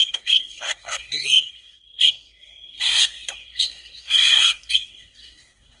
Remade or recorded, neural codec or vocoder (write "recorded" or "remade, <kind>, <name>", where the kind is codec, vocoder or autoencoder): remade, codec, SNAC